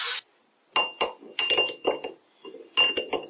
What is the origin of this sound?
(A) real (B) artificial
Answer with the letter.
A